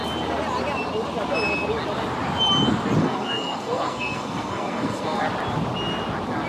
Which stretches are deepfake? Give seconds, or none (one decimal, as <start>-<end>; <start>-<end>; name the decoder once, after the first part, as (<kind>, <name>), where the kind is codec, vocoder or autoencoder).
3.0-5.2 (codec, SNAC)